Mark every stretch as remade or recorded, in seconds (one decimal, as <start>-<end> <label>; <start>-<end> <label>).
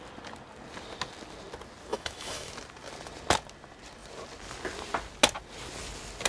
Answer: 0.0-1.9 recorded; 1.9-2.5 remade; 2.5-6.3 recorded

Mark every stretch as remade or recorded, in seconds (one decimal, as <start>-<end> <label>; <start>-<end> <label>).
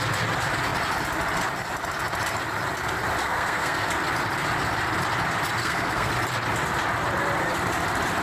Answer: 0.0-3.2 recorded; 3.2-3.9 remade; 3.9-5.6 recorded; 5.6-6.1 remade; 6.1-8.2 recorded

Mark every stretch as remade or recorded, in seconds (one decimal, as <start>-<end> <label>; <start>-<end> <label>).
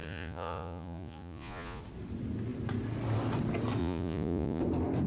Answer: 0.0-1.8 remade; 1.8-3.8 recorded; 3.8-4.6 remade; 4.6-5.1 recorded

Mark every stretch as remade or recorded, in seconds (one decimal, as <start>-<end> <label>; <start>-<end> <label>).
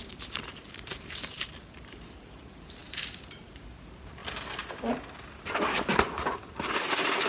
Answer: 0.0-4.2 remade; 4.2-7.3 recorded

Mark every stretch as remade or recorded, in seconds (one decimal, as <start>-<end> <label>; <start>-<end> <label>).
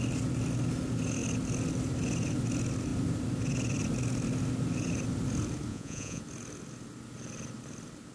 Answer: 0.0-5.7 recorded; 5.7-6.2 remade; 6.2-8.1 recorded